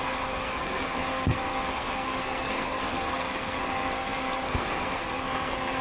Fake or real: fake